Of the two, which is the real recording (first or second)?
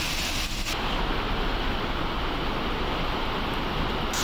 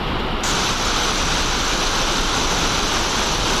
first